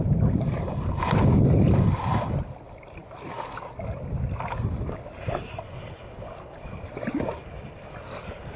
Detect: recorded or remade recorded